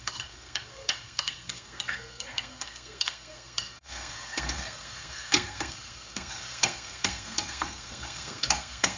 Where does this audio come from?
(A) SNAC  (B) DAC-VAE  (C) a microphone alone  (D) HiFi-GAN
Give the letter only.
A